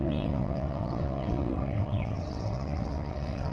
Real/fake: fake